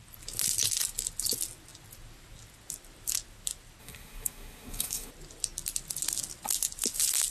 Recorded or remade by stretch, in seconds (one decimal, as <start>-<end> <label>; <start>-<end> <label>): 0.0-3.8 recorded; 3.8-5.1 remade; 5.1-7.3 recorded

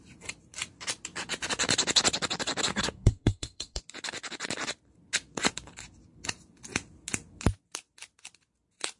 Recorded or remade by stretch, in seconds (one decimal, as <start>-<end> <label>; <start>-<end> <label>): 0.0-2.7 recorded; 2.7-3.8 remade; 3.8-9.0 recorded

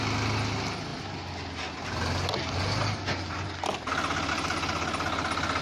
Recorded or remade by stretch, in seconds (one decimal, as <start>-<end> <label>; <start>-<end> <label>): 0.0-5.6 recorded

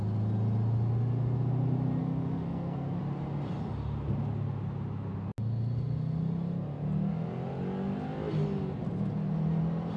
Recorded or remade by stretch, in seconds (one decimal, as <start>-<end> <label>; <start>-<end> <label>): 0.0-2.0 recorded; 2.0-3.0 remade; 3.0-10.0 recorded

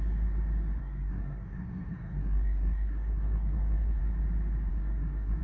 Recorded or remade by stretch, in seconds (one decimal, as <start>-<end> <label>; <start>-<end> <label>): 0.0-0.8 recorded; 0.8-4.0 remade; 4.0-4.7 recorded; 4.7-5.4 remade

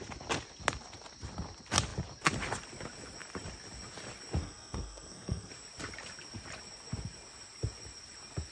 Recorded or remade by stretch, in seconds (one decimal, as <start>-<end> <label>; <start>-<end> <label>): 0.0-4.4 recorded; 4.4-5.5 remade; 5.5-8.5 recorded

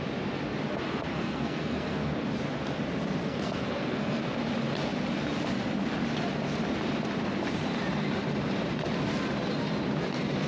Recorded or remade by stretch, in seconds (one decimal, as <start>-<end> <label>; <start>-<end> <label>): 0.0-1.1 recorded; 1.1-2.1 remade; 2.1-3.2 recorded; 3.2-4.2 remade; 4.2-10.5 recorded

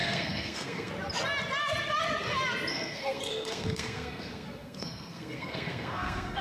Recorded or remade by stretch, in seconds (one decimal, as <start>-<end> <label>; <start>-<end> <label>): 0.0-0.9 remade; 0.9-2.7 recorded; 2.7-6.4 remade